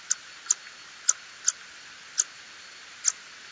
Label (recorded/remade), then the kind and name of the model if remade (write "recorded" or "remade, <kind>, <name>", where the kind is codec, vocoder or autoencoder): recorded